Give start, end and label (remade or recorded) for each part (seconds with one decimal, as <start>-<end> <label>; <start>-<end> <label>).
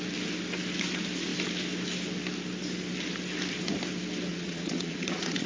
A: 0.0-4.3 recorded; 4.3-5.5 remade